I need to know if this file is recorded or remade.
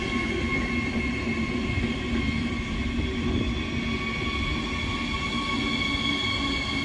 recorded